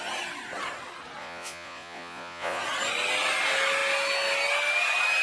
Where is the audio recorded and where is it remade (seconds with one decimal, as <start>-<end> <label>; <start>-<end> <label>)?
0.0-1.2 recorded; 1.2-2.6 remade; 2.6-5.2 recorded